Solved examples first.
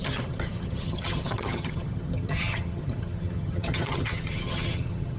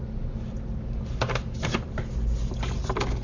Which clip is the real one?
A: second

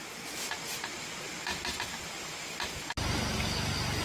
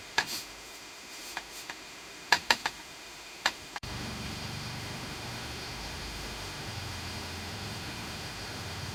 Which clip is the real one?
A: first